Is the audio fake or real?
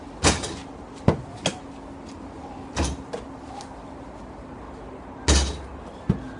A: real